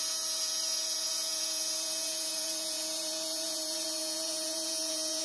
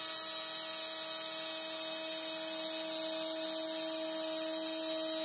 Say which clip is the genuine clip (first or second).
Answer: second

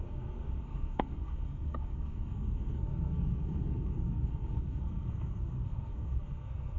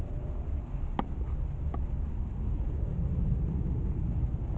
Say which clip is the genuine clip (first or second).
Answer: second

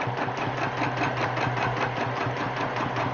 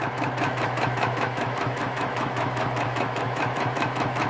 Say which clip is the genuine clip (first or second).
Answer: first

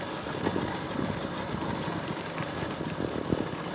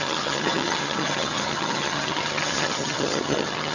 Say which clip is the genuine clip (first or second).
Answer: first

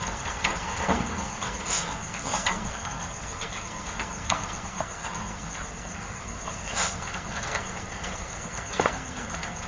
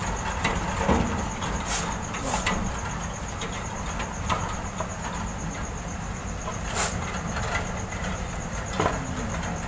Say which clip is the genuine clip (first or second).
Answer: second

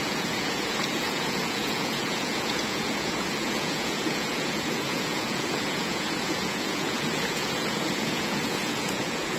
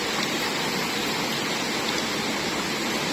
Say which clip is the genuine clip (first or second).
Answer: second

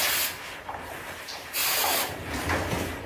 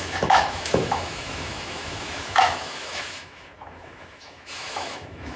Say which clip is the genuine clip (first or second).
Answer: first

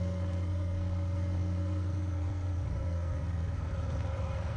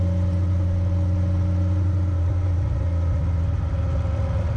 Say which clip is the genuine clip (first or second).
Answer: second